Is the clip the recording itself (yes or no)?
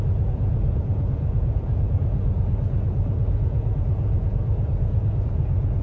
no